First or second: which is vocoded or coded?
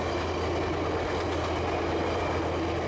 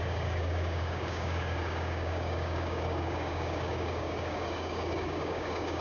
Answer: second